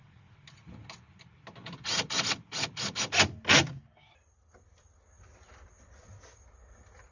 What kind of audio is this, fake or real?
real